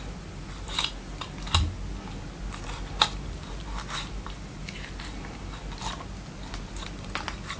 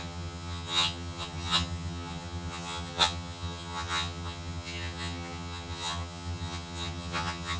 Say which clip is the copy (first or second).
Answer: second